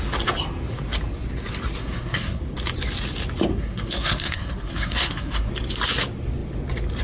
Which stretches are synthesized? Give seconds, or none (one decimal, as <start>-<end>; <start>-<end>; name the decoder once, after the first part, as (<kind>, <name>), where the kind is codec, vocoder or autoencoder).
1.8-2.4 (codec, SNAC); 3.5-5.5

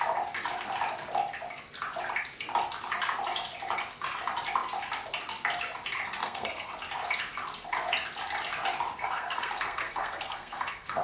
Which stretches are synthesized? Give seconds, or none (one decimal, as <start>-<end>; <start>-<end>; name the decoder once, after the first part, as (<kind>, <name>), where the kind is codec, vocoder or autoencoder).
6.2-6.7 (codec, SNAC); 9.0-11.0

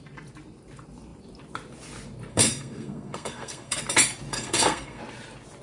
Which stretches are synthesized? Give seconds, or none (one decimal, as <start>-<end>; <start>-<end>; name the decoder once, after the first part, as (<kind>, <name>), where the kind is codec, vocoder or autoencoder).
2.3-3.8 (codec, SNAC); 4.3-5.0

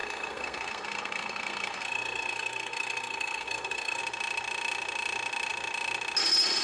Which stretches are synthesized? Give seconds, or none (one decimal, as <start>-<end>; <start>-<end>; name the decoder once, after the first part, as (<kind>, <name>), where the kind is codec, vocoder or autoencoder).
0.0-4.0 (codec, SNAC)

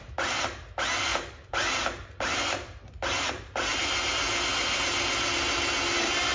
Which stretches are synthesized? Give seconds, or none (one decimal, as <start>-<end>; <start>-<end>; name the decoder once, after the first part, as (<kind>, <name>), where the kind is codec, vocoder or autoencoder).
none

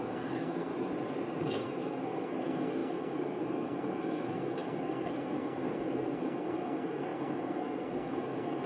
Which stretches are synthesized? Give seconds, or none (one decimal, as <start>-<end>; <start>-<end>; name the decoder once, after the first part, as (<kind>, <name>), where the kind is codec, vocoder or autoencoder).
0.0-0.7 (codec, SNAC); 1.4-8.7